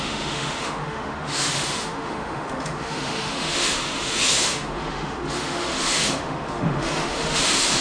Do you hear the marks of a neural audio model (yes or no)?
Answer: yes